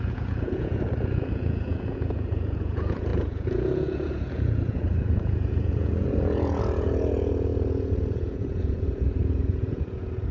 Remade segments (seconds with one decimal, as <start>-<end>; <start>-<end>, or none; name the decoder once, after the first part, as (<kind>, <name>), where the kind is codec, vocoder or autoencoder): 0.0-10.3 (vocoder, Vocos)